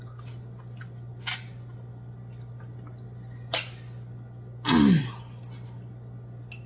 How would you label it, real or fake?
real